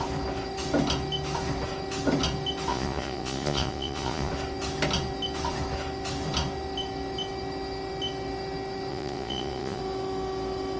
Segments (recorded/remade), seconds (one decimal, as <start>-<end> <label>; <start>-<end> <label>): 0.0-2.7 recorded; 2.7-4.3 remade; 4.3-8.9 recorded; 8.9-9.8 remade; 9.8-10.8 recorded